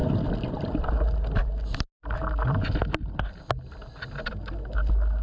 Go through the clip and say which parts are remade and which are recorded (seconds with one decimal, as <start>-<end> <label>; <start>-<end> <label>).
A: 0.0-5.2 recorded

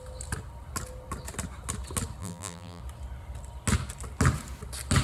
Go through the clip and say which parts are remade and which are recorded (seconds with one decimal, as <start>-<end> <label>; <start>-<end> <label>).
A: 0.0-2.2 recorded; 2.2-2.8 remade; 2.8-5.0 recorded

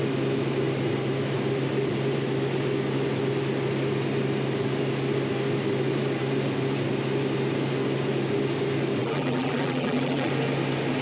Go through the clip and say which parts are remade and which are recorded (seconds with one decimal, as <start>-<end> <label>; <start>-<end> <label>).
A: 0.0-9.0 recorded; 9.0-10.3 remade; 10.3-11.0 recorded

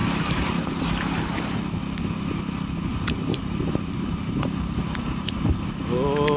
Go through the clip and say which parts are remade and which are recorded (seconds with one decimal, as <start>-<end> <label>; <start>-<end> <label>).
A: 0.0-1.3 remade; 1.3-2.9 recorded; 2.9-5.4 remade; 5.4-6.4 recorded

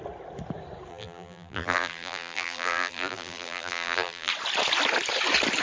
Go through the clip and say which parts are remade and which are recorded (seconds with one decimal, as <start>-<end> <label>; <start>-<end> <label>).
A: 0.0-0.9 recorded; 0.9-4.3 remade; 4.3-5.6 recorded

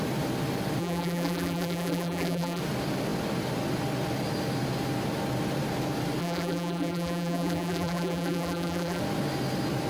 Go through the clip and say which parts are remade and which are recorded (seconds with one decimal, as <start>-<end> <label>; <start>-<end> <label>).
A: 0.0-0.8 recorded; 0.8-2.6 remade; 2.6-6.2 recorded; 6.2-9.0 remade; 9.0-9.9 recorded

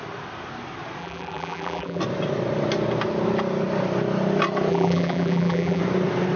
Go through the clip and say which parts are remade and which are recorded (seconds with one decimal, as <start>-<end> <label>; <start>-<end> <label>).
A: 0.0-1.0 recorded; 1.0-2.0 remade; 2.0-4.7 recorded; 4.7-5.8 remade; 5.8-6.4 recorded

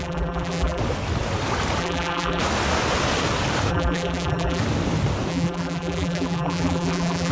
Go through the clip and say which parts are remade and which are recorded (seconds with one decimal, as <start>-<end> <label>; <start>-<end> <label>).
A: 0.0-0.8 remade; 0.8-1.8 recorded; 1.8-2.4 remade; 2.4-3.7 recorded; 3.7-4.6 remade; 4.6-5.3 recorded; 5.3-7.3 remade